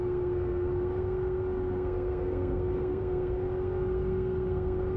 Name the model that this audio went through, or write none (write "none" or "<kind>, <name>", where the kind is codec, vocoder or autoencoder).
codec, SNAC